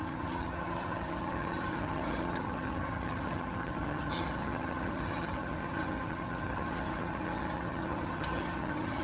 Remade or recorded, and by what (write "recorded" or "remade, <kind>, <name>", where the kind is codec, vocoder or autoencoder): remade, vocoder, HiFi-GAN